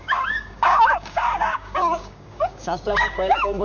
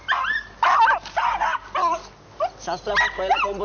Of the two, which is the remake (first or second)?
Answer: first